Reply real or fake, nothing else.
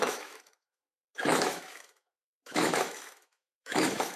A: fake